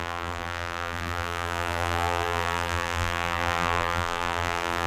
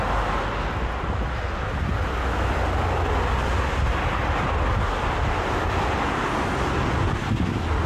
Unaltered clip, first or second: second